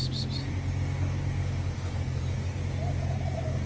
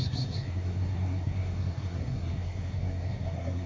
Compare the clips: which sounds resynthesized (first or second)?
second